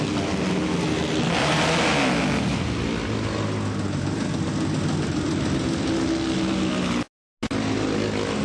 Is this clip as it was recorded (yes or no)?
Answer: yes